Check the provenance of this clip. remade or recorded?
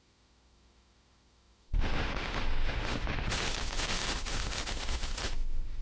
remade